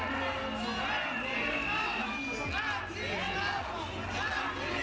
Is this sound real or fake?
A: real